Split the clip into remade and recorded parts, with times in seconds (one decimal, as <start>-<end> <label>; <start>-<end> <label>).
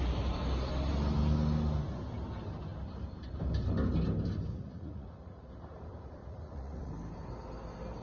0.0-4.5 recorded; 4.5-5.5 remade; 5.5-6.2 recorded; 6.2-6.9 remade; 6.9-8.0 recorded